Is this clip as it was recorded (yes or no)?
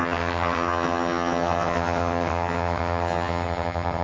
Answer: no